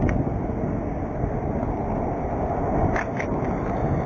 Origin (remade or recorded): recorded